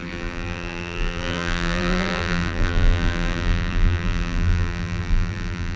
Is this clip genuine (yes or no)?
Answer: no